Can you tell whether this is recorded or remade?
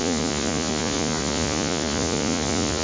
remade